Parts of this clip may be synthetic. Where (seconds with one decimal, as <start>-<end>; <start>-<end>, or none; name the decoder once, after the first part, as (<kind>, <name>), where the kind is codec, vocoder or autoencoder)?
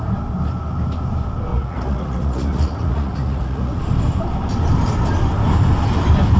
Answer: 1.5-3.8 (vocoder, Vocos)